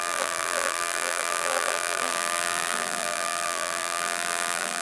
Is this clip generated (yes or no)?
yes